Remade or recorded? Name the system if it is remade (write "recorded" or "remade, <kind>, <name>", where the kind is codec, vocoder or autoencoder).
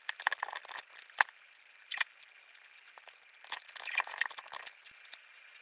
recorded